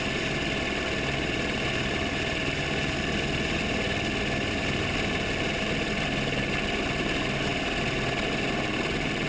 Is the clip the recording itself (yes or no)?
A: yes